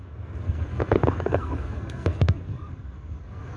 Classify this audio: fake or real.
fake